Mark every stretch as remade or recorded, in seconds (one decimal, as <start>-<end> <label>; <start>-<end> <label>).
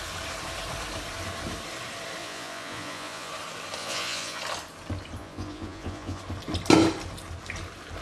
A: 0.0-2.2 recorded; 2.2-3.3 remade; 3.3-3.8 recorded; 3.8-4.4 remade; 4.4-5.2 recorded; 5.2-6.2 remade; 6.2-8.0 recorded